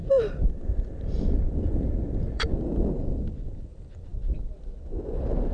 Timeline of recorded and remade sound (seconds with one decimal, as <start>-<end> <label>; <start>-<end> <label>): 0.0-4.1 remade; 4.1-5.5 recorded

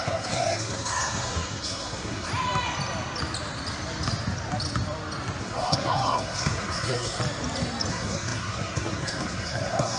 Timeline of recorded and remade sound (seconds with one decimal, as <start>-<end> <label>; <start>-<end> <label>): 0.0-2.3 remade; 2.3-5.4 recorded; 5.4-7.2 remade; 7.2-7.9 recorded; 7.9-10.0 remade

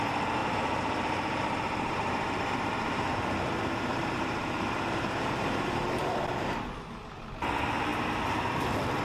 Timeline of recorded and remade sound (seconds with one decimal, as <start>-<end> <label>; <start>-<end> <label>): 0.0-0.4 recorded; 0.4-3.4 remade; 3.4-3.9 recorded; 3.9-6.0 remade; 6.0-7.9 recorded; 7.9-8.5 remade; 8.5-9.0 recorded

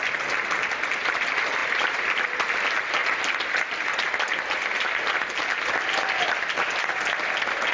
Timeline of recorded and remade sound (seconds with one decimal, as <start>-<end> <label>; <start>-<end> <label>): 0.0-7.7 recorded

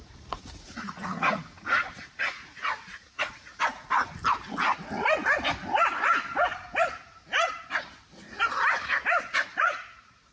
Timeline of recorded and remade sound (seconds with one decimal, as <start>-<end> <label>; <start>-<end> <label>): 0.0-4.0 remade; 4.0-9.2 recorded; 9.2-10.3 remade